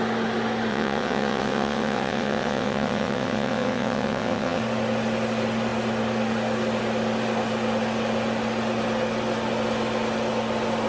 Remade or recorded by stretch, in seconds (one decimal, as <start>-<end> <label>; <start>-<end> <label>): 0.0-0.7 recorded; 0.7-4.6 remade; 4.6-10.9 recorded